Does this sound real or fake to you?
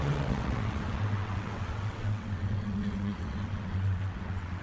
fake